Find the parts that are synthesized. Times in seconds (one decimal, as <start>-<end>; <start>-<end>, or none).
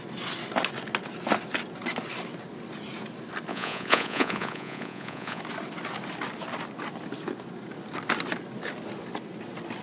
3.5-5.4